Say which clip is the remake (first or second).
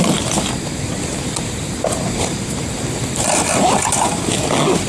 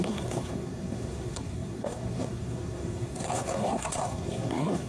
second